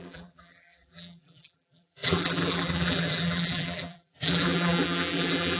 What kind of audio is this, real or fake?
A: fake